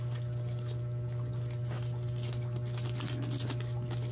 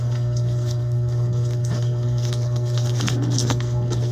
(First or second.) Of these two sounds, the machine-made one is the second